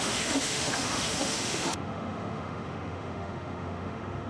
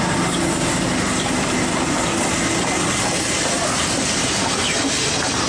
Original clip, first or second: second